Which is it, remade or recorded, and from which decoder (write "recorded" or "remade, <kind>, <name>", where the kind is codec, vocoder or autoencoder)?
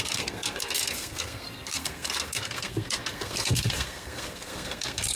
remade, codec, SNAC